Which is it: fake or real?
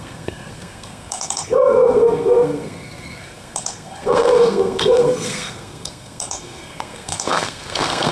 fake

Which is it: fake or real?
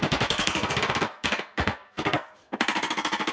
fake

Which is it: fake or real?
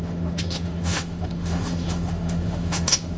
fake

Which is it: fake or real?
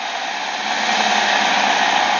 real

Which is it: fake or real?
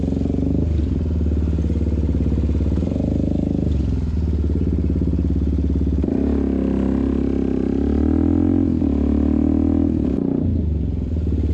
real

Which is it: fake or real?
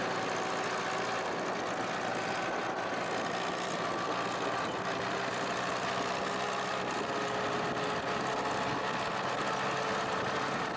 real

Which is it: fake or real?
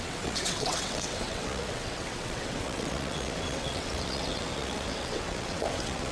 fake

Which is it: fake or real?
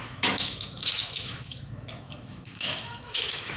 fake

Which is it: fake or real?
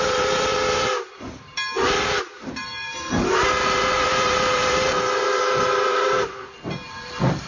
fake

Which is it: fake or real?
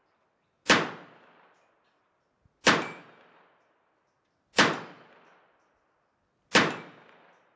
real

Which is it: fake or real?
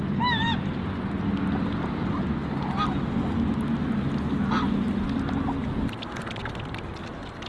real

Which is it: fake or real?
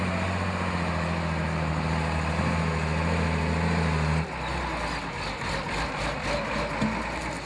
real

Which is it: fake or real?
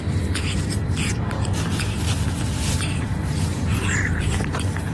fake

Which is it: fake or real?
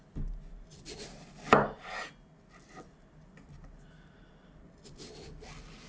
real